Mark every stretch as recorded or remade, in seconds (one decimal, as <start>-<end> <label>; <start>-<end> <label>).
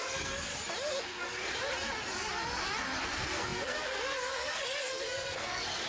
0.0-0.5 remade; 0.5-1.0 recorded; 1.0-1.5 remade; 1.5-3.0 recorded; 3.0-5.9 remade